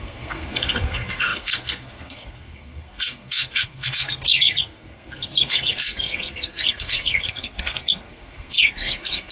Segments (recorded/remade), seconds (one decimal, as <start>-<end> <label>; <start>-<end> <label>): 0.0-9.3 remade